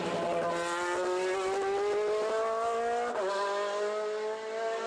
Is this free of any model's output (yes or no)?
yes